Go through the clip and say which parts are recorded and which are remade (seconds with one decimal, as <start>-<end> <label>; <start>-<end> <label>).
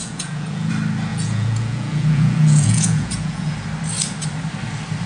0.0-0.7 remade; 0.7-1.1 recorded; 1.1-3.5 remade; 3.5-5.1 recorded